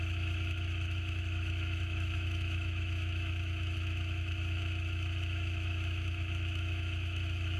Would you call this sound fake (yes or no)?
yes